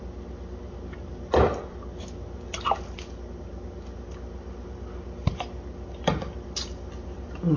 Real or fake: real